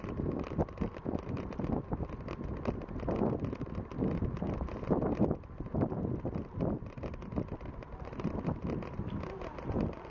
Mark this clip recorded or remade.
recorded